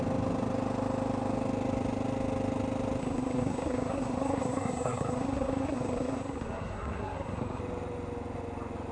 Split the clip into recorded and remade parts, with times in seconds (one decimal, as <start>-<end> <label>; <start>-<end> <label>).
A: 0.0-3.0 recorded; 3.0-7.6 remade; 7.6-8.9 recorded